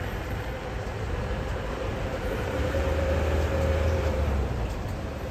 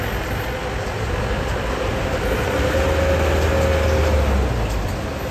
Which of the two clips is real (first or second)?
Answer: second